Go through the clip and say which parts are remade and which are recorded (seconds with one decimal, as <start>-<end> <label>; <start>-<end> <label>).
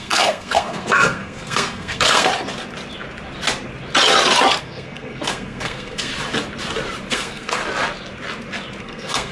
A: 0.0-2.3 remade; 2.3-4.6 recorded; 4.6-6.1 remade; 6.1-7.1 recorded; 7.1-7.6 remade; 7.6-8.8 recorded; 8.8-9.3 remade